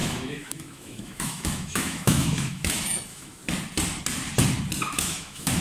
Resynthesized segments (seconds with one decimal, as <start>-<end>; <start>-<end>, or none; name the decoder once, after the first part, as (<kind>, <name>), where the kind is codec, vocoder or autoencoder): 0.0-3.4 (autoencoder, DAC-VAE); 4.9-5.6